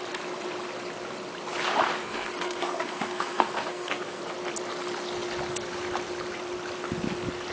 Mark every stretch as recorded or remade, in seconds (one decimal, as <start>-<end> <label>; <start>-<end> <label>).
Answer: 0.0-2.0 recorded; 2.0-4.2 remade; 4.2-7.5 recorded